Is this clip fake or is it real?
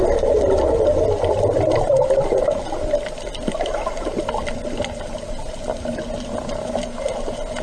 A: real